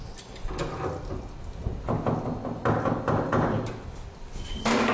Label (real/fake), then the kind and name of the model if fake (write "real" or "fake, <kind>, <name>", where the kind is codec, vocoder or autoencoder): real